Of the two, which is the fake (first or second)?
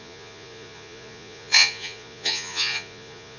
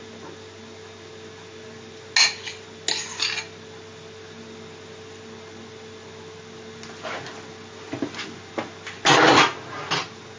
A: first